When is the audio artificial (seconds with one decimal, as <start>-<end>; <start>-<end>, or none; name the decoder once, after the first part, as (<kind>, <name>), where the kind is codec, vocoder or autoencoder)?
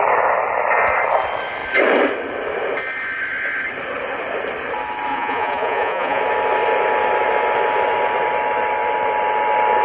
5.1-6.2 (vocoder, Vocos)